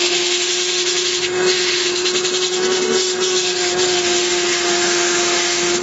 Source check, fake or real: fake